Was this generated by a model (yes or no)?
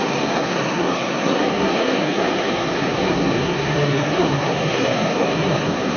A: yes